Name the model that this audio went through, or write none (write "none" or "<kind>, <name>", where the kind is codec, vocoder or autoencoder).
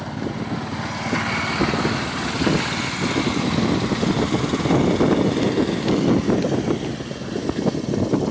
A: none